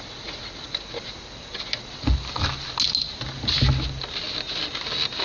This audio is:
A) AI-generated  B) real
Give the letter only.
B